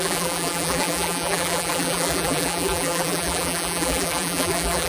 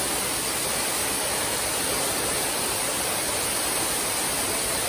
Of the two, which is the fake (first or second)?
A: first